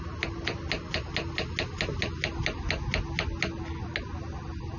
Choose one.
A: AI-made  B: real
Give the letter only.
B